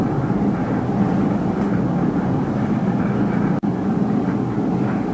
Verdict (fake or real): real